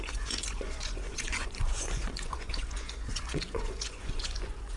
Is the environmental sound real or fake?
fake